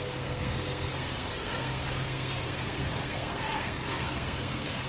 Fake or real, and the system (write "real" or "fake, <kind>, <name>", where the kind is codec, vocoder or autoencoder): fake, codec, SNAC